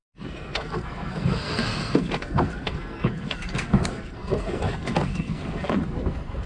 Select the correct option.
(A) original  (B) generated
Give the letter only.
B